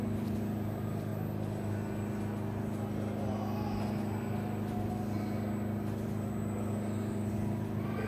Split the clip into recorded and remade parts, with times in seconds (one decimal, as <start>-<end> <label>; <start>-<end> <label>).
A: 0.0-8.1 recorded